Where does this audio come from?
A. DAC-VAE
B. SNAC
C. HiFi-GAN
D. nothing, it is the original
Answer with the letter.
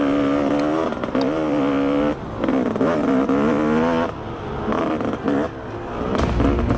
D